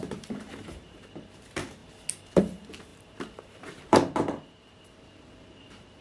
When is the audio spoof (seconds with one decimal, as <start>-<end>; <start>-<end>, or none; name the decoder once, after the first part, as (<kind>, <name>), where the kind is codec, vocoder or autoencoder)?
0.0-1.8 (vocoder, BigVGAN v2); 2.4-6.0